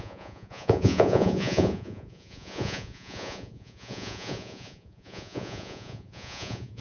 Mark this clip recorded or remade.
remade